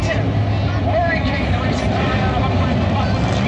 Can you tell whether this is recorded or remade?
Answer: recorded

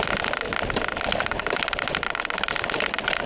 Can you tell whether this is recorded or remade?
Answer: recorded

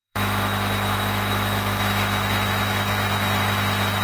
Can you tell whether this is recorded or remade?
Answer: remade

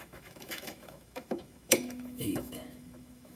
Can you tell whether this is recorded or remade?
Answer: remade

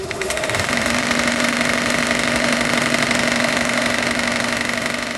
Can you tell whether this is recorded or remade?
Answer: remade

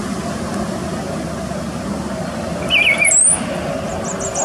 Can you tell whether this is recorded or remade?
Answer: recorded